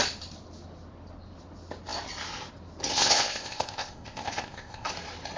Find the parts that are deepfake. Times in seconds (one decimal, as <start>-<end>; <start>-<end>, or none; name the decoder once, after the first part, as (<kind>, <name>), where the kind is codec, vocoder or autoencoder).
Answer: 2.9-4.9 (codec, ZipCodec)